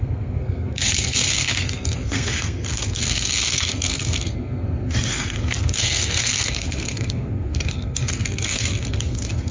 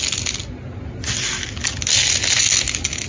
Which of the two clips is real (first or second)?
second